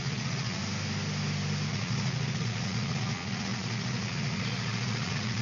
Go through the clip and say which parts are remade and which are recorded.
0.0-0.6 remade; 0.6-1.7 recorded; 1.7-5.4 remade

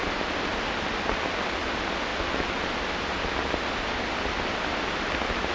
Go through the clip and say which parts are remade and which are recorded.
0.0-5.5 recorded

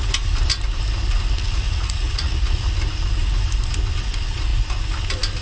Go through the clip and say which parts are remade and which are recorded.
0.0-1.4 recorded; 1.4-2.7 remade; 2.7-5.4 recorded

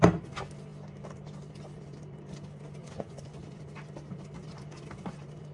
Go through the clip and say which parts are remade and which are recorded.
0.0-2.8 recorded; 2.8-3.4 remade; 3.4-5.5 recorded

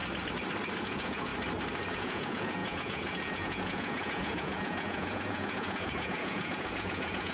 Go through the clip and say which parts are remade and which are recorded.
0.0-0.8 recorded; 0.8-1.3 remade; 1.3-1.9 recorded; 1.9-7.3 remade

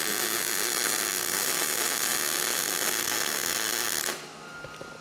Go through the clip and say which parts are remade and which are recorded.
0.0-5.0 recorded

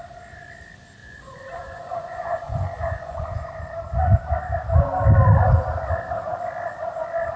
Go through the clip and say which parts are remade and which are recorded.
0.0-1.0 recorded; 1.0-3.7 remade; 3.7-7.4 recorded

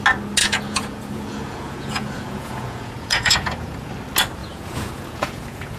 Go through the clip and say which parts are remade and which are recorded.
0.0-0.4 recorded; 0.4-3.9 remade; 3.9-4.4 recorded; 4.4-5.8 remade